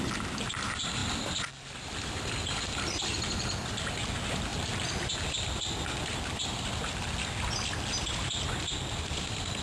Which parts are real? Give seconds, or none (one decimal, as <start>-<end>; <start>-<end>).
0.0-9.6